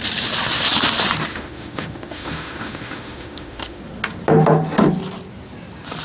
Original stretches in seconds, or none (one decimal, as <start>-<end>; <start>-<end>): 0.0-1.3; 3.8-6.0